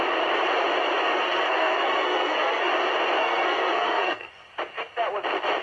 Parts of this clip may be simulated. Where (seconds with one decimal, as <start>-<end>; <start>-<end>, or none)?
1.1-2.7; 3.2-4.3